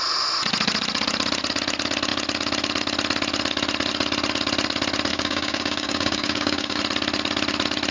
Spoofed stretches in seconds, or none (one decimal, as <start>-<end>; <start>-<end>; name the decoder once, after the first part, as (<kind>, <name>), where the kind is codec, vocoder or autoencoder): 5.1-6.8 (codec, DAC)